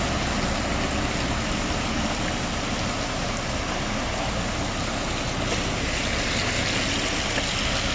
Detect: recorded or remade recorded